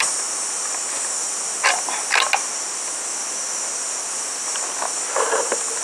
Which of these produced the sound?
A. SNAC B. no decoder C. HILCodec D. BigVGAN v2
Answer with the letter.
B